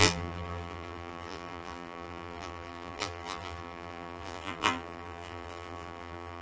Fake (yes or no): yes